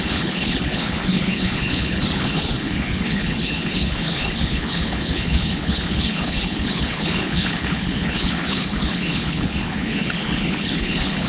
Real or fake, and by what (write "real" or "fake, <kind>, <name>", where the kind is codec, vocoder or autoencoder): fake, codec, HILCodec